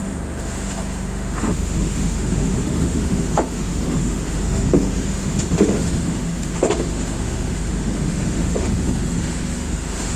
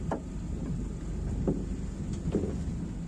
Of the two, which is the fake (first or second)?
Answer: first